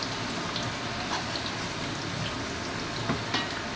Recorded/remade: recorded